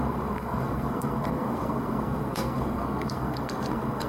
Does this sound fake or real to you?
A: fake